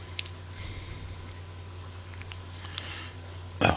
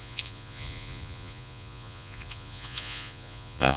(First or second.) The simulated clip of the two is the second